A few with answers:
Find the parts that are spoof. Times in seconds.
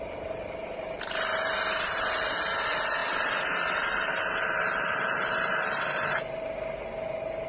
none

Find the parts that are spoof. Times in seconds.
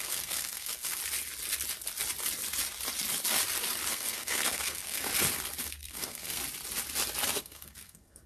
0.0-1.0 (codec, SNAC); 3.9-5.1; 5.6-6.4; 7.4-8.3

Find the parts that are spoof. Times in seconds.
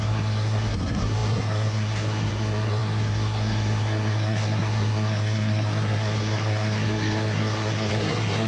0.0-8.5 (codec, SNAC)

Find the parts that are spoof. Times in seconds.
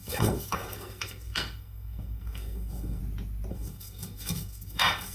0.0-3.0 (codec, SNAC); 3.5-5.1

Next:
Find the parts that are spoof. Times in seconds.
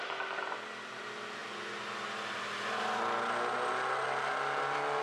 none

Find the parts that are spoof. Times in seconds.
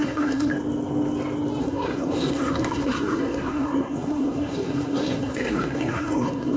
0.0-0.5 (codec, SNAC); 1.6-6.6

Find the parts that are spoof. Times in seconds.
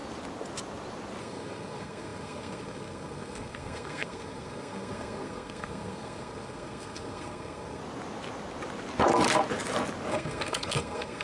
1.2-7.8 (codec, SNAC); 10.1-11.2